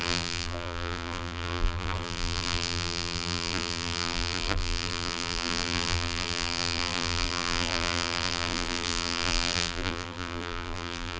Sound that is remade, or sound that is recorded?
remade